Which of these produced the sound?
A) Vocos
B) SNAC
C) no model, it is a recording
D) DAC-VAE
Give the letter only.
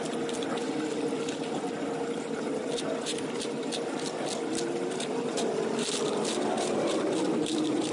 C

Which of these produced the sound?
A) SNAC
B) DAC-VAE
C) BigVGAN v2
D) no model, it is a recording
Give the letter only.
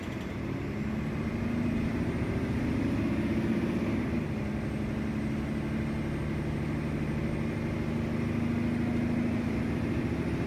D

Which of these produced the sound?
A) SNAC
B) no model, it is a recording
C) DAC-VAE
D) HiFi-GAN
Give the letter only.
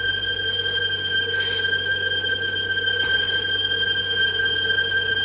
B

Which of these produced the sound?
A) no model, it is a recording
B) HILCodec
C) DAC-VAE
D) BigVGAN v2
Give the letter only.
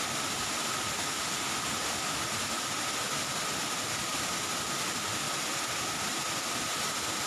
A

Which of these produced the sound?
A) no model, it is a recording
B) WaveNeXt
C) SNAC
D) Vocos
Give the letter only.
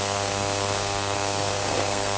C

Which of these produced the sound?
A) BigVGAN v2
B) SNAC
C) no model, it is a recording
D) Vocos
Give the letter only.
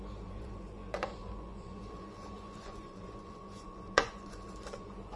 D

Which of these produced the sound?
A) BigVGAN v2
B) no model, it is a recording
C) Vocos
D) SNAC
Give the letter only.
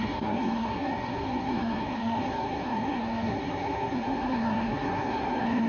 D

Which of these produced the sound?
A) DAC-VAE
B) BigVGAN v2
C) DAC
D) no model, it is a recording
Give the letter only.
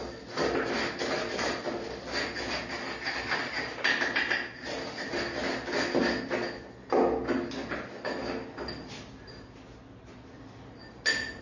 D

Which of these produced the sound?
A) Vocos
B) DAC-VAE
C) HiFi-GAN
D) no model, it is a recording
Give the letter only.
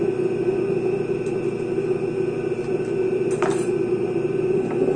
D